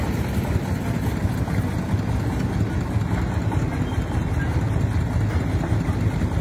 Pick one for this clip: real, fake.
real